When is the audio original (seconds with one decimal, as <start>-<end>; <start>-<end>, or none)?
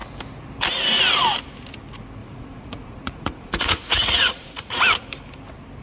0.0-2.2; 4.7-5.8